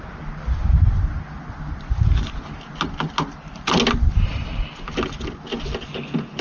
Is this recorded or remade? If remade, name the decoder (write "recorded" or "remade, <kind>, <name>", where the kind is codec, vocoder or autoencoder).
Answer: recorded